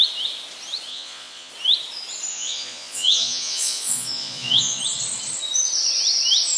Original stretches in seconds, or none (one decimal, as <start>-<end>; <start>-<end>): 0.0-0.9; 1.5-2.3; 4.8-6.6